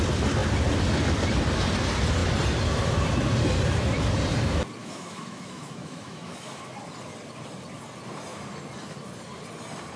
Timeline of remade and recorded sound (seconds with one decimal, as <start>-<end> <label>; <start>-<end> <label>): 0.0-4.8 recorded; 4.8-6.7 remade; 6.7-10.0 recorded